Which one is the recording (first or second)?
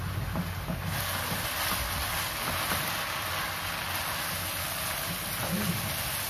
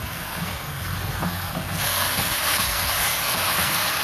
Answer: first